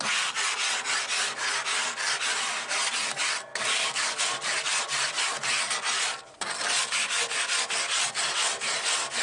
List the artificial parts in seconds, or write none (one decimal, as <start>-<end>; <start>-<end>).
3.5-4.2